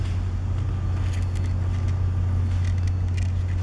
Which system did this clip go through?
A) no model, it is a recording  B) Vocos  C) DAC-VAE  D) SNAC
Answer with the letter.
A